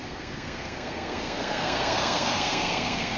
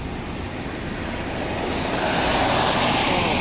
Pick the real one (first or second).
second